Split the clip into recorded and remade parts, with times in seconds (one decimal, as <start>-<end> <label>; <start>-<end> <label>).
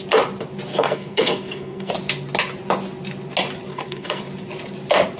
0.0-0.7 recorded; 0.7-1.9 remade; 1.9-3.7 recorded; 3.7-4.2 remade; 4.2-5.2 recorded